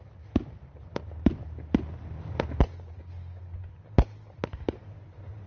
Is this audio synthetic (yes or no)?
no